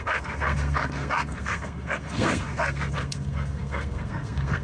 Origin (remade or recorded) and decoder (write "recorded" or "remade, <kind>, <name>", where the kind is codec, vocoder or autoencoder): remade, codec, SNAC